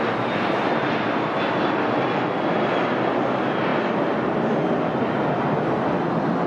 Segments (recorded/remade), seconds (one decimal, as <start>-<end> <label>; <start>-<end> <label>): 0.0-6.5 recorded